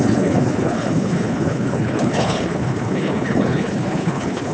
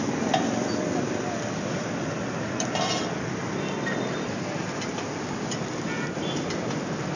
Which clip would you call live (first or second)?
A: second